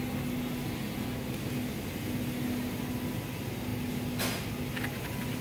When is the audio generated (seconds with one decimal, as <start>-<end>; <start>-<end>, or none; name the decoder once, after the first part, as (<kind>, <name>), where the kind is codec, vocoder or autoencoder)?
none